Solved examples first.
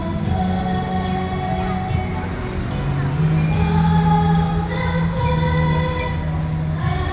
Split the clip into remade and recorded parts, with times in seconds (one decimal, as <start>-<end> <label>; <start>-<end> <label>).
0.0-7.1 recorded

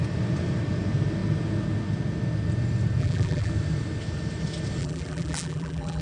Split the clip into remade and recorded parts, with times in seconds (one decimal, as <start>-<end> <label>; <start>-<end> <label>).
0.0-3.0 recorded; 3.0-3.5 remade; 3.5-4.8 recorded; 4.8-6.0 remade

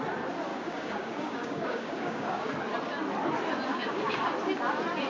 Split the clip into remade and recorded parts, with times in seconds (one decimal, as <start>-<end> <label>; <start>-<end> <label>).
0.0-0.5 recorded; 0.5-2.5 remade; 2.5-3.7 recorded; 3.7-4.3 remade; 4.3-5.1 recorded

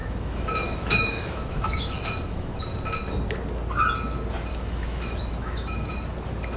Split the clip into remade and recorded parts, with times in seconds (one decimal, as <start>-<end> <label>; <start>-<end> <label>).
0.0-2.6 remade; 2.6-4.5 recorded; 4.5-5.9 remade; 5.9-6.6 recorded

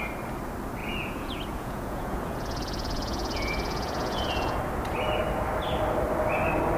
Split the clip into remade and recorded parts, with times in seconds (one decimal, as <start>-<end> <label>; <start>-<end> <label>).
0.0-0.8 recorded; 0.8-4.6 remade; 4.6-6.8 recorded

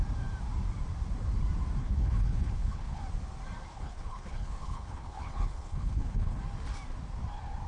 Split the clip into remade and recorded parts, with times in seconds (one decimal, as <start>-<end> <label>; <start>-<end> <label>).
0.0-1.8 recorded; 1.8-3.0 remade; 3.0-3.7 recorded; 3.7-6.4 remade; 6.4-7.7 recorded